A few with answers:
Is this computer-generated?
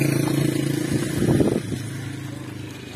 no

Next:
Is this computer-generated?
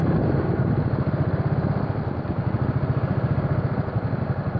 no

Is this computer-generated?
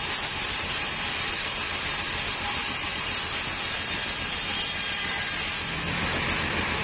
yes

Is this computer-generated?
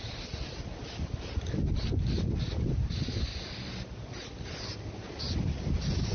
no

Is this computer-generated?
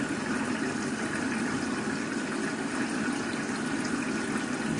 no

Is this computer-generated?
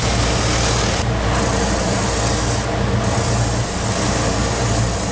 no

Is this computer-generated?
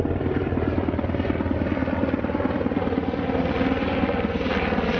no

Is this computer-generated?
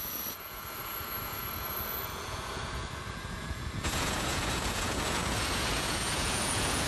yes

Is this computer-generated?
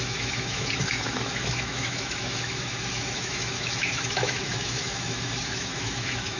yes